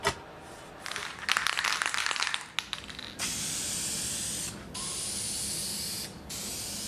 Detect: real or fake real